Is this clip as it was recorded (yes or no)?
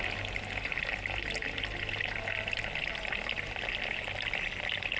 yes